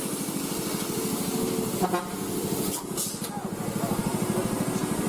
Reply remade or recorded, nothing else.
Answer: recorded